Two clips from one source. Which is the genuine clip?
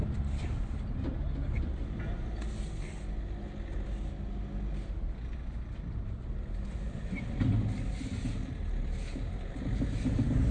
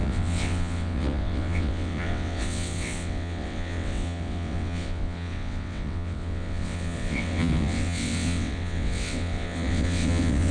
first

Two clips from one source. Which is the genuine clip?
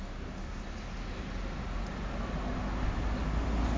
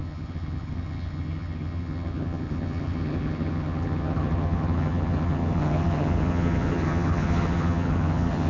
first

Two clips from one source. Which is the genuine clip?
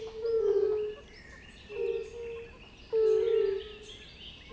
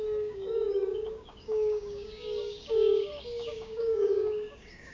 first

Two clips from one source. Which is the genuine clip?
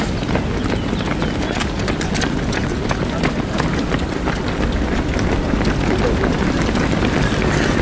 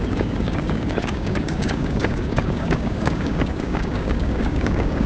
first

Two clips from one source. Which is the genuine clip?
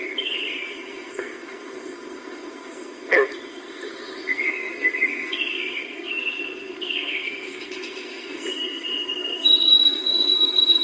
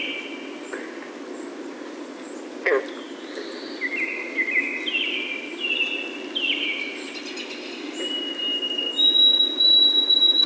second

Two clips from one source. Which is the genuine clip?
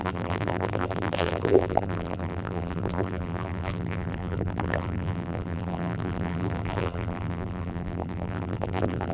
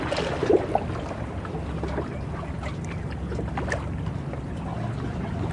second